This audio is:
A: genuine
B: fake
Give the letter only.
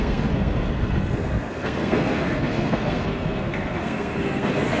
B